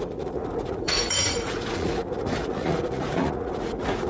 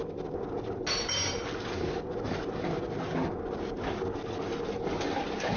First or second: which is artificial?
first